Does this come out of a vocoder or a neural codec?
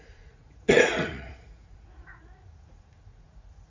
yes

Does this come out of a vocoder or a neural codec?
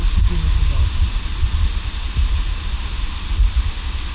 no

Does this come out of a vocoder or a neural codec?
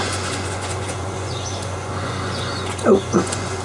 yes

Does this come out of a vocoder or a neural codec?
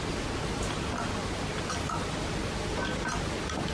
no